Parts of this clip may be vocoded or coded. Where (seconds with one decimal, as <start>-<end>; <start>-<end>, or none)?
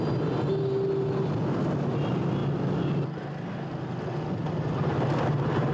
none